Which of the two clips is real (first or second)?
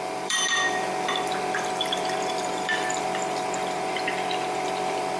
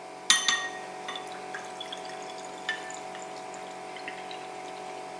second